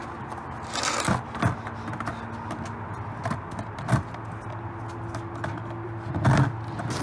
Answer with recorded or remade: recorded